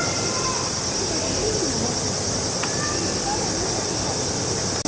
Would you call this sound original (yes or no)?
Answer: yes